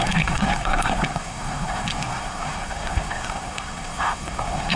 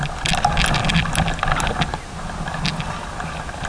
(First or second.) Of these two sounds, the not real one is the first